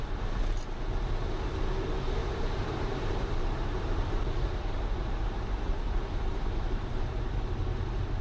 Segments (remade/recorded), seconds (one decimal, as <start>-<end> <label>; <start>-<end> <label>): 0.0-2.2 recorded; 2.2-7.1 remade; 7.1-8.2 recorded